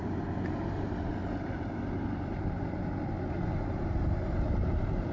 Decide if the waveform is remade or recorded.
remade